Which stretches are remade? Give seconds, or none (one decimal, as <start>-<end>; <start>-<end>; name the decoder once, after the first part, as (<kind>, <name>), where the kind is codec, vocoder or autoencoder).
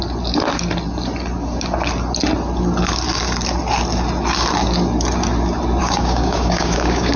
5.8-7.2 (codec, DAC)